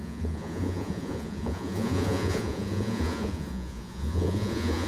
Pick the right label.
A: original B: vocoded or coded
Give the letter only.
B